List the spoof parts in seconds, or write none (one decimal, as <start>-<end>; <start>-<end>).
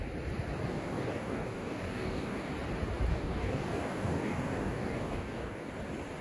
0.7-2.5; 3.1-5.7